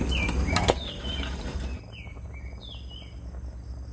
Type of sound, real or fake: real